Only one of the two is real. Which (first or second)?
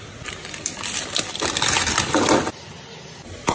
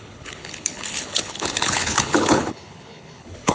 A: first